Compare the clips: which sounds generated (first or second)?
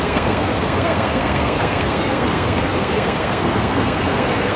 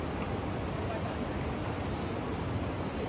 first